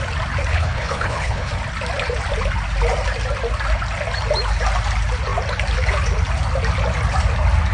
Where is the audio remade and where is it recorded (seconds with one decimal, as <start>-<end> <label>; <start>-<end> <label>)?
0.0-0.5 recorded; 0.5-1.5 remade; 1.5-7.7 recorded